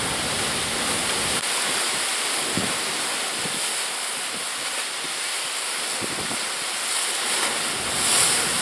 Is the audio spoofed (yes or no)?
no